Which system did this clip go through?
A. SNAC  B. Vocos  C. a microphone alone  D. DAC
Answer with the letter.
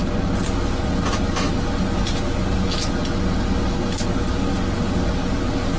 C